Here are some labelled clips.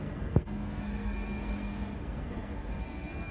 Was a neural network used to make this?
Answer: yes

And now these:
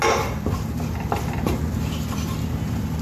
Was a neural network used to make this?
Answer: no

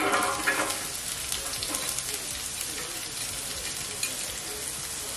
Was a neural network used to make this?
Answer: no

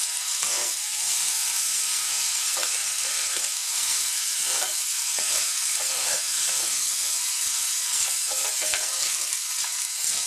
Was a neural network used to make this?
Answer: yes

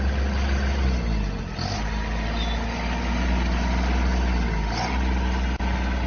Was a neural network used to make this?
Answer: no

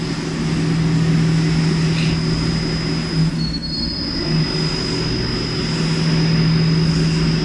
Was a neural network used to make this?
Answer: no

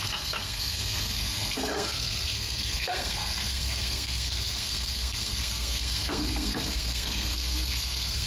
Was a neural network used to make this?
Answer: yes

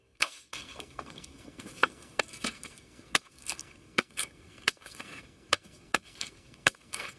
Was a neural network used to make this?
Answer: yes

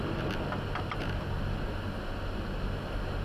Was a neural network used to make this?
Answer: no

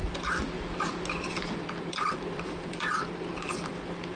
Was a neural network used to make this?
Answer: no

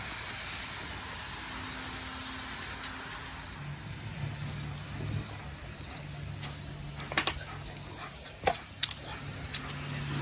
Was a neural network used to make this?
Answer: no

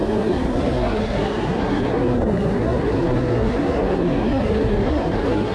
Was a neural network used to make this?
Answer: yes